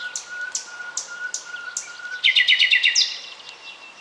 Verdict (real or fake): real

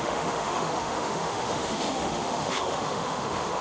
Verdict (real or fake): fake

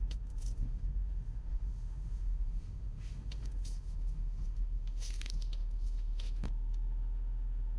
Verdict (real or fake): fake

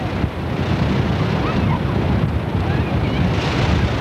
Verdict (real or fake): real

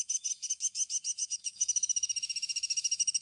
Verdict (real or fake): fake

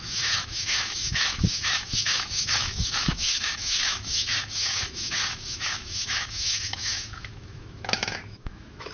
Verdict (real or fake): fake